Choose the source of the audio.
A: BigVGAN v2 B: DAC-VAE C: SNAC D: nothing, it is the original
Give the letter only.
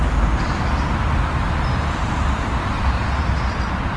D